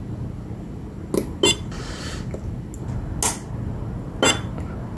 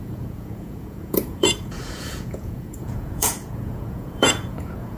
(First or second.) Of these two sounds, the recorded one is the first